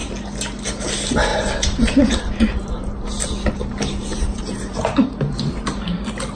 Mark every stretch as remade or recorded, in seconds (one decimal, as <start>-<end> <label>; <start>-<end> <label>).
0.0-0.6 remade; 0.6-1.3 recorded; 1.3-2.2 remade; 2.2-2.6 recorded; 2.6-3.2 remade; 3.2-4.1 recorded; 4.1-5.8 remade; 5.8-6.4 recorded